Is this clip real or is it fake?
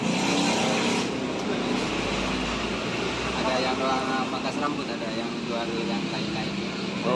real